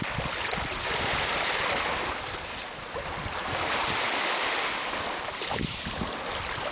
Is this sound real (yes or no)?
yes